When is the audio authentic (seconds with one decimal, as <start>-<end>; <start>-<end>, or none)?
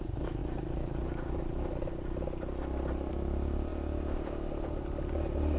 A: 0.0-5.6